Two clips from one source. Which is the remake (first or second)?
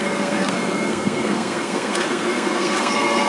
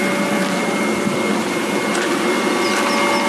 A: first